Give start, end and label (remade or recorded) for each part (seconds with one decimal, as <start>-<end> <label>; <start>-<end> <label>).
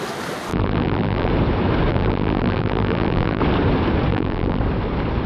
0.0-0.5 recorded; 0.5-1.3 remade; 1.3-1.9 recorded; 1.9-3.4 remade; 3.4-4.1 recorded; 4.1-4.6 remade; 4.6-5.3 recorded